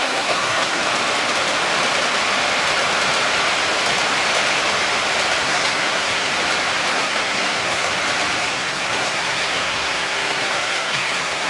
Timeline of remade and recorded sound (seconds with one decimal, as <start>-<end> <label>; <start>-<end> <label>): 0.0-0.8 remade; 0.8-5.4 recorded; 5.4-6.3 remade; 6.3-6.9 recorded; 6.9-7.9 remade; 7.9-8.4 recorded; 8.4-11.5 remade